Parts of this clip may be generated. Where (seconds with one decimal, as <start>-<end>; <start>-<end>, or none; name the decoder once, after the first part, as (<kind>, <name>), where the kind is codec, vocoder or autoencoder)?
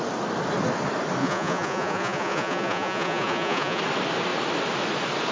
1.2-3.8 (vocoder, Vocos)